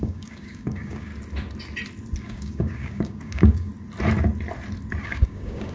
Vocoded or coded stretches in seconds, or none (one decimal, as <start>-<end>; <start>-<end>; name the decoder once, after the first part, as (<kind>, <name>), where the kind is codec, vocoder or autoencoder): 0.0-1.1 (codec, DAC); 2.2-3.7; 5.0-5.7